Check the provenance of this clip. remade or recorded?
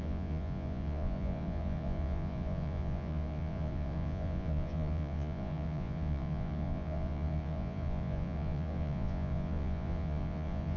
remade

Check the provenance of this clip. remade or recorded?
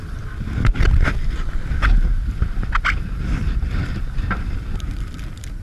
remade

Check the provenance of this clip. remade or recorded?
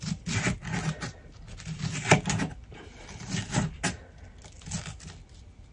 recorded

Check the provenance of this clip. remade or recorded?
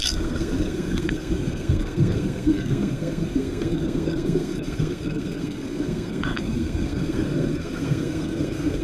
remade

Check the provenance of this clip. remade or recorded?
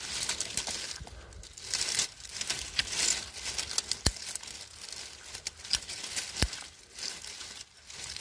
recorded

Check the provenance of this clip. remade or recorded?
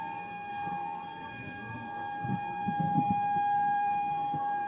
remade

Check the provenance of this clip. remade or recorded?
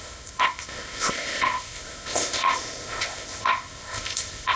remade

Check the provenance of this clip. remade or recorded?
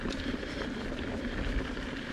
recorded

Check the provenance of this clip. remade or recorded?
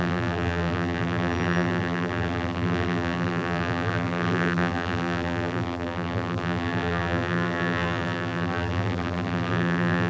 remade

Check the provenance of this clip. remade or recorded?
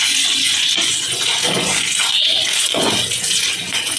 remade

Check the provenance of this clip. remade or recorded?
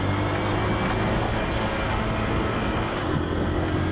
recorded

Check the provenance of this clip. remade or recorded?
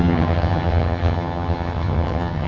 remade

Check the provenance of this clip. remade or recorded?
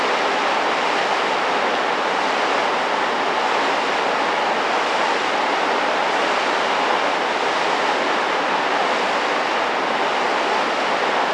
recorded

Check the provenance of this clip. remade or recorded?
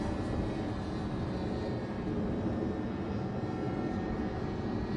recorded